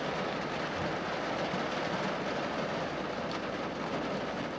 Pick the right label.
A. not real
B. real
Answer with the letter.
B